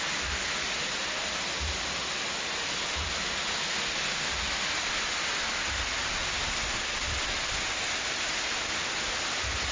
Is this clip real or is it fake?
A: real